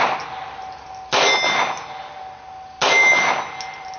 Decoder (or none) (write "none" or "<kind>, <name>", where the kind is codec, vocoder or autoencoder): none